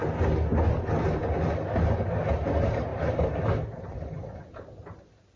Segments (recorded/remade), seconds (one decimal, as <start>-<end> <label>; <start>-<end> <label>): 0.0-5.4 recorded